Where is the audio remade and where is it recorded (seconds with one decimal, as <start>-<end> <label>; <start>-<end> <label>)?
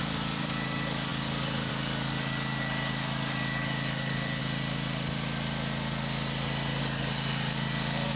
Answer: 0.0-4.4 remade; 4.4-6.8 recorded; 6.8-8.2 remade